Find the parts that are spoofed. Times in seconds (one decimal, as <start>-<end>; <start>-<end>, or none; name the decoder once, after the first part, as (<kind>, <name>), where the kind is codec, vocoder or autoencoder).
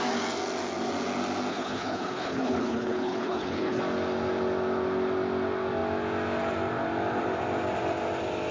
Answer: 1.5-3.8 (codec, HILCodec)